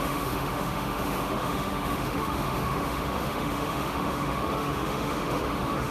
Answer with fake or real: fake